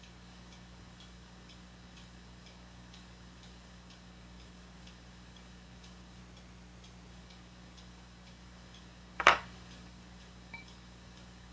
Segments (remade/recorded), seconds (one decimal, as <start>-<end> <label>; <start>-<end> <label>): 0.0-6.2 remade; 6.2-7.1 recorded; 7.1-11.5 remade